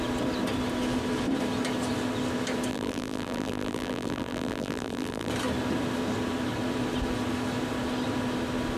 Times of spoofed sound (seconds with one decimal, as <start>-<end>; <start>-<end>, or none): 2.7-5.3